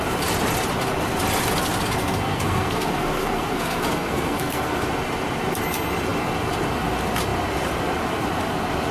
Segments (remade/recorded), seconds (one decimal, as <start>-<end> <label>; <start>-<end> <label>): 0.0-2.0 recorded; 2.0-4.8 remade; 4.8-8.9 recorded